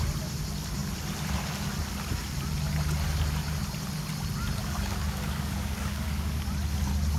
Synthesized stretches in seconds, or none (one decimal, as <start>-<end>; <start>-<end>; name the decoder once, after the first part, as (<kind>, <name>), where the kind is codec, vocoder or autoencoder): 4.6-6.5 (codec, DAC)